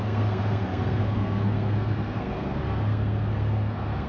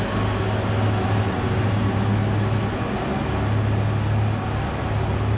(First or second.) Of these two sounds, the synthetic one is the first